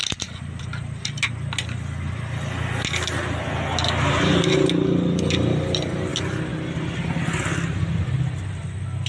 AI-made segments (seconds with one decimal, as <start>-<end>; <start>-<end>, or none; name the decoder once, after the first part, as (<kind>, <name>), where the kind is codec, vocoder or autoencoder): none